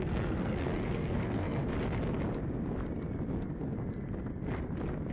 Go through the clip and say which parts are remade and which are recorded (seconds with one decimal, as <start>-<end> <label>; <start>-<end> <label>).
0.0-1.6 remade; 1.6-5.1 recorded